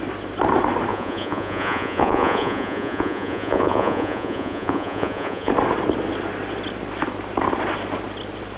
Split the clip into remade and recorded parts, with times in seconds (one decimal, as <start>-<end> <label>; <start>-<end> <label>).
0.0-0.9 recorded; 0.9-5.5 remade; 5.5-8.6 recorded